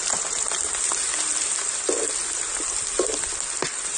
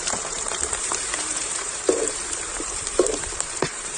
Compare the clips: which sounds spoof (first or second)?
second